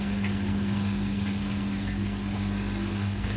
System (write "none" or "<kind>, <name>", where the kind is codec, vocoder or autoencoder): codec, SNAC